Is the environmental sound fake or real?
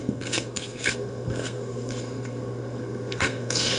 fake